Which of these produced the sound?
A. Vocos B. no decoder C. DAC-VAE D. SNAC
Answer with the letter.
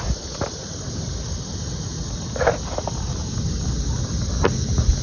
B